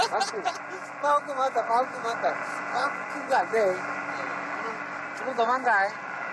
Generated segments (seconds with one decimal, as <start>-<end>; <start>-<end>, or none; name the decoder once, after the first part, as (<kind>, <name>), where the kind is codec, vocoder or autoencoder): 4.3-5.2 (vocoder, BigVGAN v2)